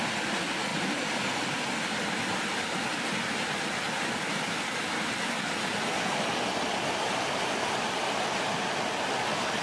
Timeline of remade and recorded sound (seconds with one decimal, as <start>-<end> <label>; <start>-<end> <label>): 0.0-9.6 recorded